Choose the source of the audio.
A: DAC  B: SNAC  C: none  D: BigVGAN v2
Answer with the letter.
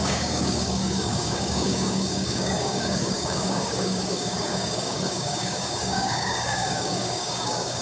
A